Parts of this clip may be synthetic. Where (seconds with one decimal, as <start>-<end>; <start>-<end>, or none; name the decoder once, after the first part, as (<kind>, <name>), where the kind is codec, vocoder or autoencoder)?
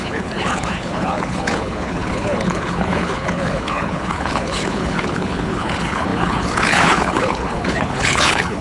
0.0-8.6 (codec, HILCodec)